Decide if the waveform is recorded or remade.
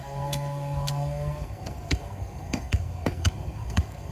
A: remade